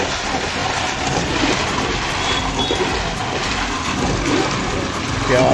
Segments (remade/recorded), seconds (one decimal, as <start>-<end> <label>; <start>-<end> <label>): 0.0-5.5 recorded